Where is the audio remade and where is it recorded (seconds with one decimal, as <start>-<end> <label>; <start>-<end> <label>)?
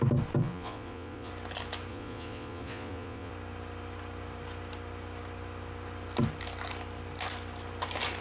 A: 0.0-0.4 recorded; 0.4-1.3 remade; 1.3-1.9 recorded; 1.9-3.3 remade; 3.3-8.2 recorded